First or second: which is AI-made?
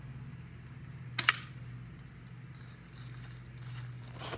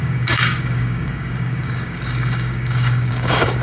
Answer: second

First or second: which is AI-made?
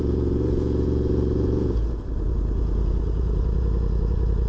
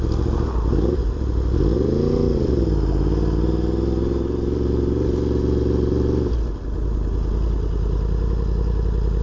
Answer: first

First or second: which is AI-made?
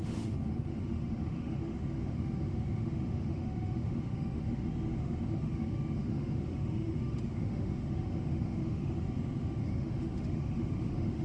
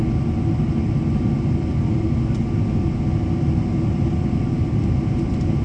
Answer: first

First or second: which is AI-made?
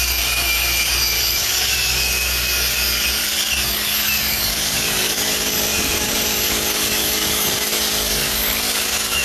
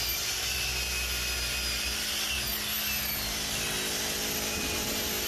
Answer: first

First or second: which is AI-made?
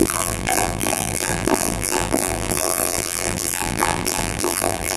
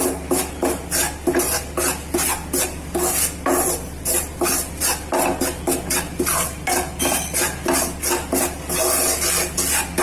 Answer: first